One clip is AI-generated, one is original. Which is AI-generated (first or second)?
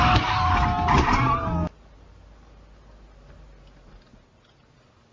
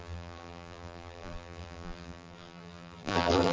second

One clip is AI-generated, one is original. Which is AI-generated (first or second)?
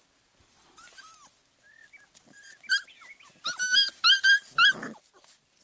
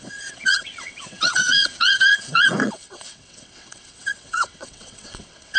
second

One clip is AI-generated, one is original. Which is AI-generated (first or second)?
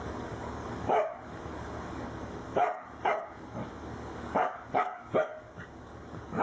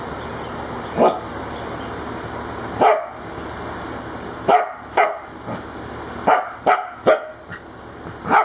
first